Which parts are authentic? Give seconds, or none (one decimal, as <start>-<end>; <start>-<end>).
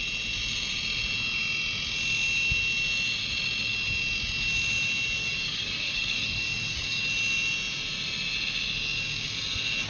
0.0-5.2; 7.0-9.9